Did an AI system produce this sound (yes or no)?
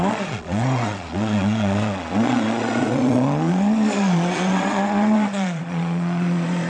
yes